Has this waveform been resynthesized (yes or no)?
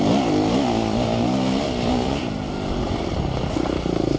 no